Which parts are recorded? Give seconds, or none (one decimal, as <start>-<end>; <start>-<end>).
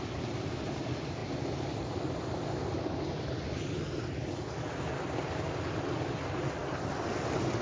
0.0-7.6